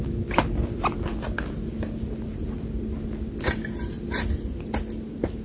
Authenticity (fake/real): real